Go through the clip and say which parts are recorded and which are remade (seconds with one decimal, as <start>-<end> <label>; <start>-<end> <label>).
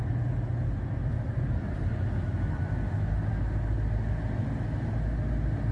0.0-1.1 recorded; 1.1-2.6 remade; 2.6-5.7 recorded